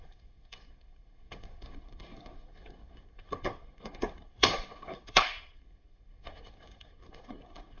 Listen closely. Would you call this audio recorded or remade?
remade